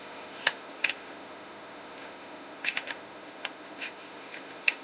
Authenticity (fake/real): fake